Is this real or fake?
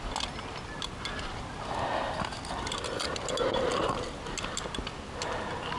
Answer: real